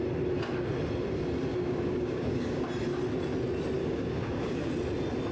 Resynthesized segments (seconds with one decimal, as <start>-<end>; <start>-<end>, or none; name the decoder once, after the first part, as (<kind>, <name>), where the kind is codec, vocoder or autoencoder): 1.5-2.6 (codec, DAC); 3.8-4.7